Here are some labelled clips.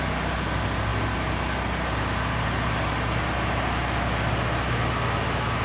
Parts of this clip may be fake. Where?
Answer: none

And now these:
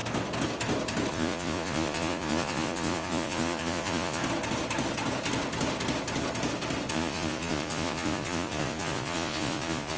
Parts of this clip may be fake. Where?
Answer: 1.1-4.2; 6.9-10.0

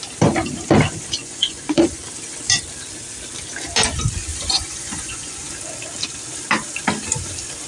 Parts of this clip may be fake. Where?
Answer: 1.2-2.0; 4.3-5.5